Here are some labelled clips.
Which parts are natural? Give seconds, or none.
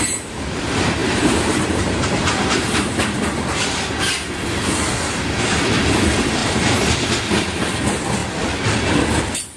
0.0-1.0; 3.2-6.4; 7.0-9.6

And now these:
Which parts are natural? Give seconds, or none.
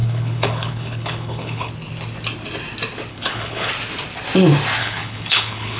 1.7-3.1; 3.7-4.8